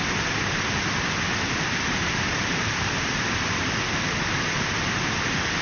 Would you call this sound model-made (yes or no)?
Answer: no